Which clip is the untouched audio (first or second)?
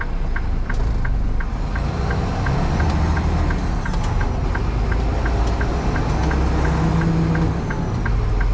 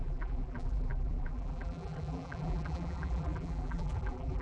first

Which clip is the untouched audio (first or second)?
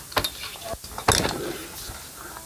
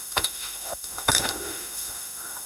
first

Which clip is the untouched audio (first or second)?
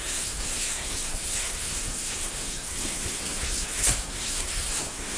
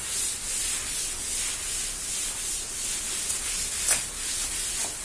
second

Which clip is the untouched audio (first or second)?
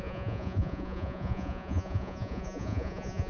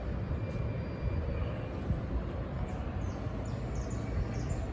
second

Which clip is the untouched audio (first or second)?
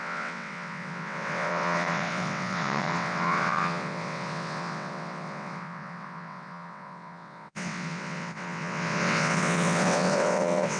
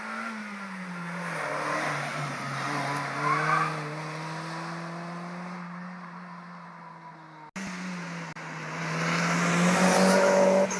second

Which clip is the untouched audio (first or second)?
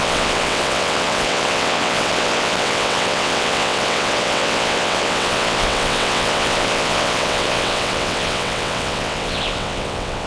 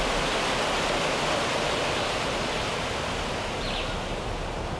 second